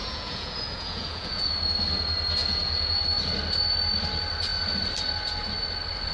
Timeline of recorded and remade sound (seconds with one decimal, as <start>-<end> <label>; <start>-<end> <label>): 0.0-1.5 remade; 1.5-2.4 recorded; 2.4-3.0 remade; 3.0-6.1 recorded